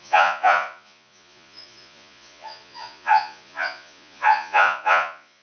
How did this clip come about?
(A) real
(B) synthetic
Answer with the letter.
B